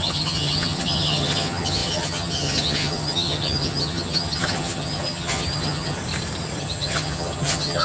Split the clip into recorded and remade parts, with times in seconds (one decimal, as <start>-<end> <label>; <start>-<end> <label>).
0.0-6.0 remade; 6.0-6.6 recorded; 6.6-7.8 remade